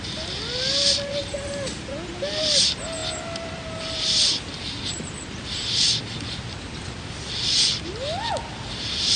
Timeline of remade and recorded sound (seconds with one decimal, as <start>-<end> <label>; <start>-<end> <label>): 0.0-9.2 recorded